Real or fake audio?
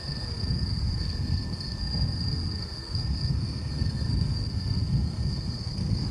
fake